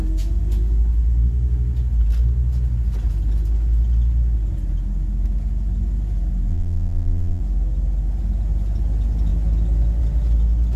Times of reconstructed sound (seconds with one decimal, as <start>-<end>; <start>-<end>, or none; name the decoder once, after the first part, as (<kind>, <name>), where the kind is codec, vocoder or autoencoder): 6.5-7.4 (vocoder, BigVGAN v2)